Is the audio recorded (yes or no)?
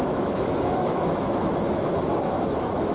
no